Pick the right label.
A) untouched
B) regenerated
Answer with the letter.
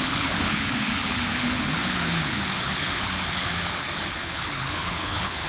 B